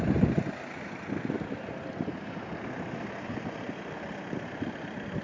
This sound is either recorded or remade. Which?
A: recorded